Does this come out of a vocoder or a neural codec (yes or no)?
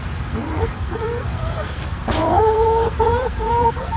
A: yes